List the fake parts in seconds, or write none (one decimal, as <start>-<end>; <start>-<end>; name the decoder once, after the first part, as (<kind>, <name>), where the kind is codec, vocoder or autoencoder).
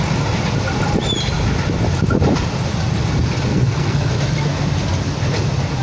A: 3.5-4.1 (codec, SNAC)